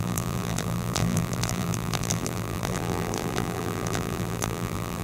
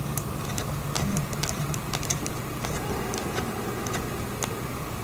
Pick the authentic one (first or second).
second